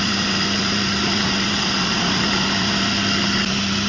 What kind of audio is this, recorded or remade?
recorded